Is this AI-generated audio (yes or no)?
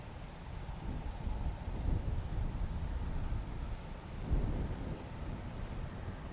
no